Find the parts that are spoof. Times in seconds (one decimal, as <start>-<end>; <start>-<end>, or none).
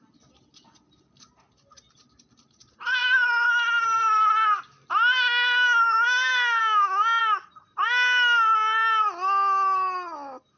6.6-7.2